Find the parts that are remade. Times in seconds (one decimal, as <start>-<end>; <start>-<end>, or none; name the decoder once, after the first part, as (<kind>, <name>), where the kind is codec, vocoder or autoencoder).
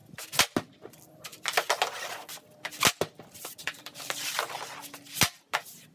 3.6-4.3 (vocoder, BigVGAN v2)